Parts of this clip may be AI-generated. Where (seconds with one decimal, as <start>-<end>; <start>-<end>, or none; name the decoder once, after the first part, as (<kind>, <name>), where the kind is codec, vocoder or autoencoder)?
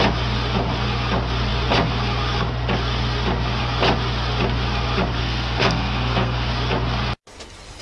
5.2-6.5 (codec, SNAC)